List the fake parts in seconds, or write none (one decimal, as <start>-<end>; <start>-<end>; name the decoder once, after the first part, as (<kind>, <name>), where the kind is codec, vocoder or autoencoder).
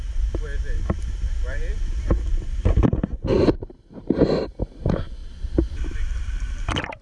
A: 2.3-2.9 (vocoder, BigVGAN v2); 5.2-6.6